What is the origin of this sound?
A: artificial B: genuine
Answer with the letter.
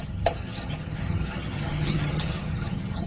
A